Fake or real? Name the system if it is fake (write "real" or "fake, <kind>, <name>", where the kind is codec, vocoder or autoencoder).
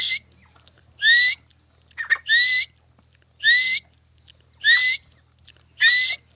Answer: real